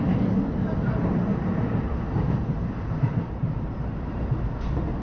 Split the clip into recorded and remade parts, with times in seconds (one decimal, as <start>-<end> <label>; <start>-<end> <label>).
0.0-1.5 recorded; 1.5-4.5 remade; 4.5-5.0 recorded